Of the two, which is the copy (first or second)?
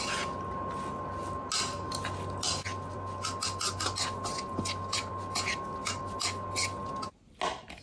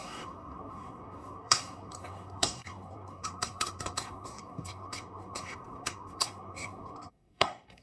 second